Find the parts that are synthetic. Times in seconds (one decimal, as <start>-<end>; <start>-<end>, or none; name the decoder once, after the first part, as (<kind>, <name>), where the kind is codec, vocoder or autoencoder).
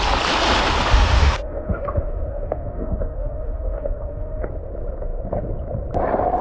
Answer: 0.9-4.4 (autoencoder, DAC-VAE)